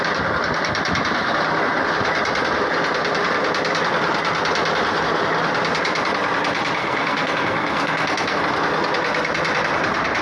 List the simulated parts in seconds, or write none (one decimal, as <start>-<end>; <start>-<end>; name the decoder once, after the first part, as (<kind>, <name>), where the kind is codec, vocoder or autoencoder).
6.8-8.4 (codec, SNAC)